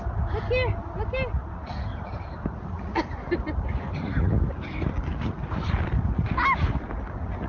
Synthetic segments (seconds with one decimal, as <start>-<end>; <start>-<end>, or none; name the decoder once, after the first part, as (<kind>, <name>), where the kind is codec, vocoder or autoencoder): none